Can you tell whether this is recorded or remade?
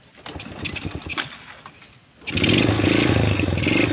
recorded